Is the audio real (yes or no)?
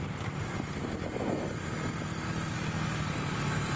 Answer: yes